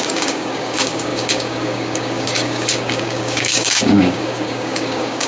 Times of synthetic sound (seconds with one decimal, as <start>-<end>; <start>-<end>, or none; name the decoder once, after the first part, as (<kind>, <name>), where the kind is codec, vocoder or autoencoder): 0.0-5.3 (codec, DAC)